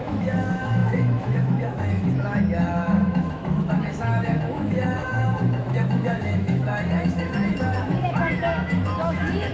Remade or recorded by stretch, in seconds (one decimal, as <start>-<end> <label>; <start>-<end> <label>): 0.0-9.5 remade